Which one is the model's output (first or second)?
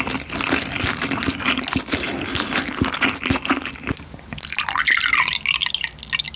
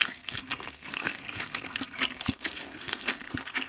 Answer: second